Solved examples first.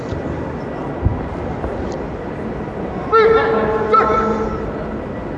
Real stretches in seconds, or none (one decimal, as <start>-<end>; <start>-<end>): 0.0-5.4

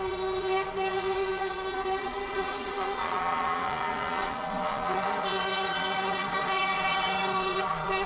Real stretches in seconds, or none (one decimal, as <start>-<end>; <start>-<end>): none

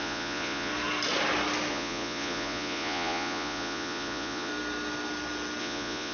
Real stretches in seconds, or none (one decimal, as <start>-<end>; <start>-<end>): 0.7-1.7; 4.5-5.6

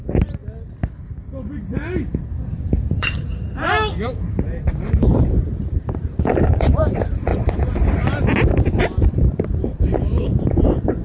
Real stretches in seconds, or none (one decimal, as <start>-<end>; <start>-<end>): 0.4-2.9; 7.3-8.8